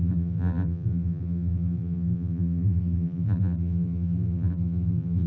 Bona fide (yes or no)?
no